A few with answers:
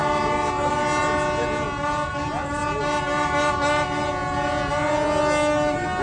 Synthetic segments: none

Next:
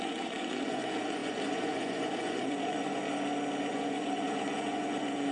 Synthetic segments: 0.0-3.0 (vocoder, Vocos); 3.7-5.3

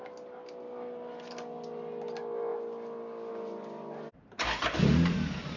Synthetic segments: none

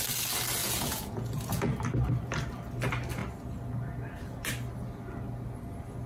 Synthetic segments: 0.6-1.7 (vocoder, Vocos)